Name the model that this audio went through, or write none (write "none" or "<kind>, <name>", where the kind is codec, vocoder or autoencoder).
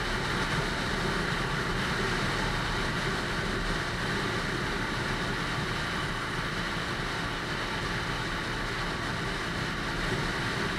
none